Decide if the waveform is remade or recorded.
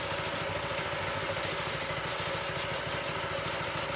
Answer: recorded